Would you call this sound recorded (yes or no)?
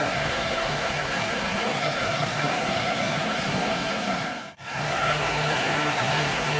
no